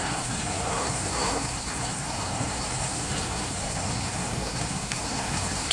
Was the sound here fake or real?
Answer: fake